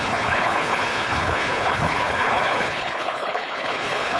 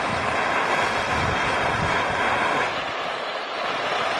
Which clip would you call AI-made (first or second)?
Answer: first